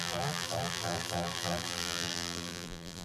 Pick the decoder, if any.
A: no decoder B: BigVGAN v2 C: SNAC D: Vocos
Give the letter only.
B